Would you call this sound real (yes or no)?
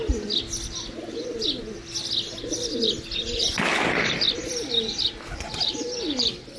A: yes